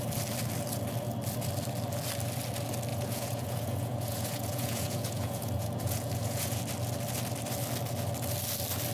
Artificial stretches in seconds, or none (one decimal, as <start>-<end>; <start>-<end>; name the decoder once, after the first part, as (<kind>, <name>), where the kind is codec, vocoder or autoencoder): 2.9-6.6 (vocoder, Vocos)